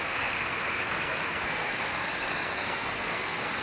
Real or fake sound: fake